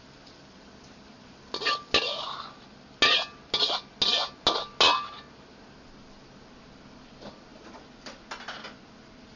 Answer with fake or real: real